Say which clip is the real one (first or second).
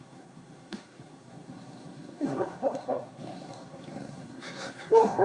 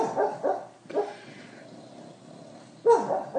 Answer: second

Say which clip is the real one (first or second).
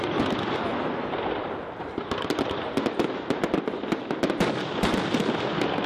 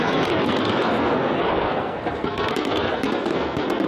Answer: first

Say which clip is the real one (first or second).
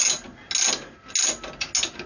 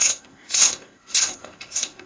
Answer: first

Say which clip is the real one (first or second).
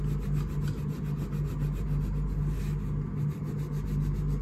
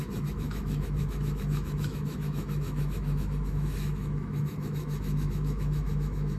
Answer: first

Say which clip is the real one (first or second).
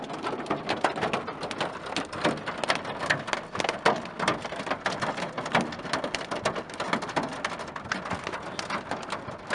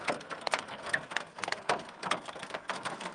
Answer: first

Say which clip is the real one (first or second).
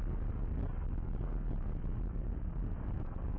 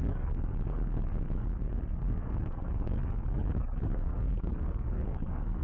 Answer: first